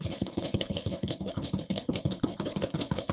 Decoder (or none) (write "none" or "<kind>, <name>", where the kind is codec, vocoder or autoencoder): codec, HILCodec